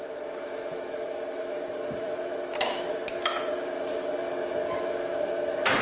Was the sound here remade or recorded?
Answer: remade